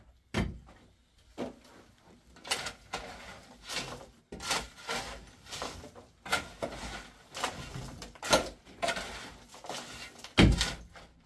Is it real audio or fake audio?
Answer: real